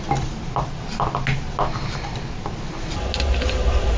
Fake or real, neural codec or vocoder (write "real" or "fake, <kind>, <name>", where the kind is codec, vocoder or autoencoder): real